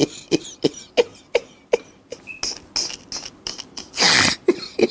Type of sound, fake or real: real